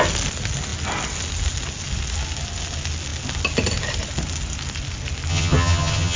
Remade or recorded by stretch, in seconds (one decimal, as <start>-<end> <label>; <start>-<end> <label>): 0.0-5.3 recorded; 5.3-6.2 remade